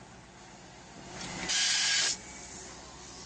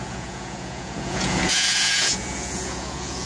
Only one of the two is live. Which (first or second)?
first